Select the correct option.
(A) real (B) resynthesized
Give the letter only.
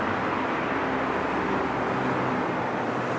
A